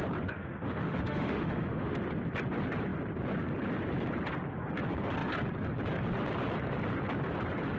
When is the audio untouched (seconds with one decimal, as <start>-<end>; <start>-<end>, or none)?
0.0-0.4; 2.0-7.8